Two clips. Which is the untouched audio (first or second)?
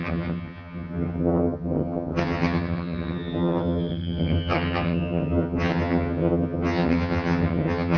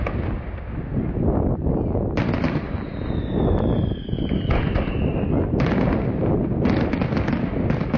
second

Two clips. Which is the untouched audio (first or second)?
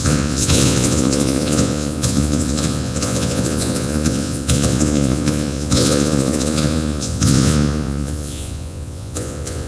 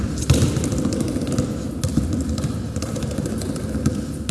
second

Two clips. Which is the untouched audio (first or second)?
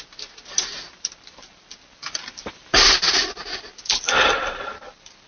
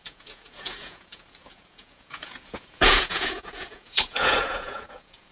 first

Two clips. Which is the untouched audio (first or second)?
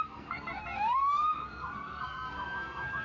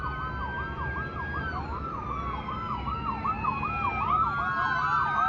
second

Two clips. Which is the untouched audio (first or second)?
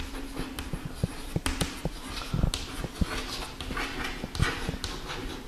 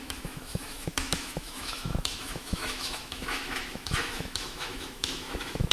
first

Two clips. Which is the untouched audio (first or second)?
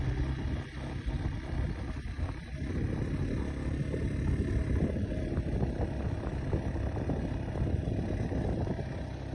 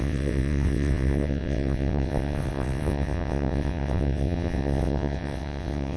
first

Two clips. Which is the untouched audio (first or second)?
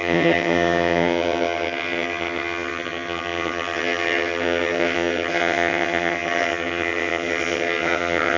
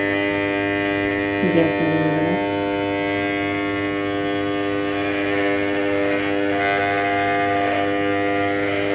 second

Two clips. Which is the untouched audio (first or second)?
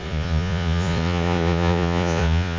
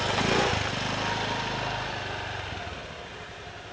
second